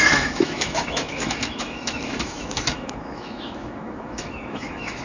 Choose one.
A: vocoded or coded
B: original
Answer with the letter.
A